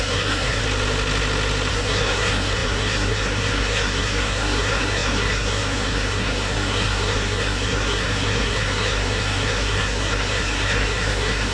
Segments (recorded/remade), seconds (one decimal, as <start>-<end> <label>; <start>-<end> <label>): 0.0-0.6 remade; 0.6-1.7 recorded; 1.7-11.5 remade